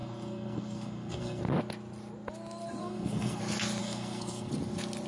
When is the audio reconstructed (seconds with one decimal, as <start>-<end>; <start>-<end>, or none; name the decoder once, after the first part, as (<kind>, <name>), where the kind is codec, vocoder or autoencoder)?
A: 0.0-1.4 (codec, SNAC); 2.8-3.4; 3.8-4.5